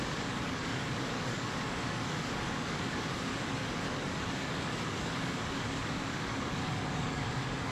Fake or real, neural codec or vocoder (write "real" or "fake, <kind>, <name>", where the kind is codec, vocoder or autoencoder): fake, codec, DAC